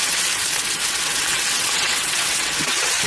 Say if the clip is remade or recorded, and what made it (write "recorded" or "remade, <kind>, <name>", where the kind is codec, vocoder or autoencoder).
remade, vocoder, WaveNeXt